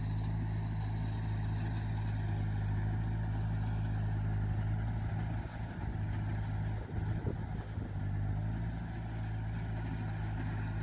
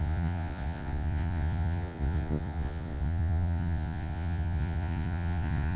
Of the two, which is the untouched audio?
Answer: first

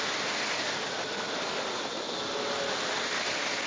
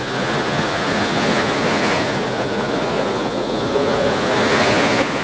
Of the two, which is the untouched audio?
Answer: first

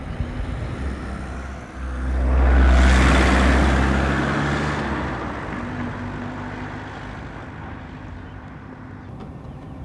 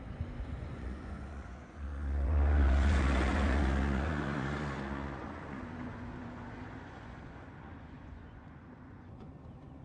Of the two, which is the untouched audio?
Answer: first